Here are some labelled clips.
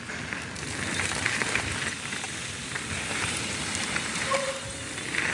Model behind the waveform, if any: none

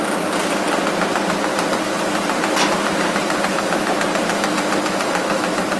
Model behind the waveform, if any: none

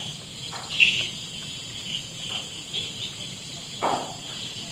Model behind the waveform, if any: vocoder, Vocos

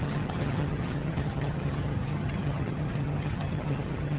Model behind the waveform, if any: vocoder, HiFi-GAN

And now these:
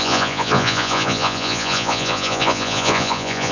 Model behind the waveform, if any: vocoder, Vocos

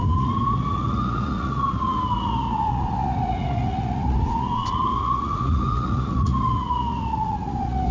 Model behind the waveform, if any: vocoder, Vocos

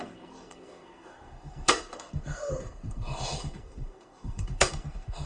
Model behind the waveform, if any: codec, SNAC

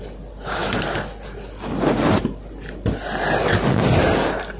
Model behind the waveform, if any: none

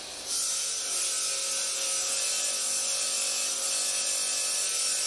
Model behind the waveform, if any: none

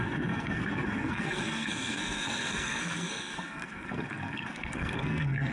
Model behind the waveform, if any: codec, SNAC